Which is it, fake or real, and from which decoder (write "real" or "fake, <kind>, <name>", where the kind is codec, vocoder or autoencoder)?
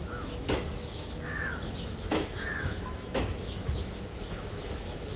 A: fake, autoencoder, DAC-VAE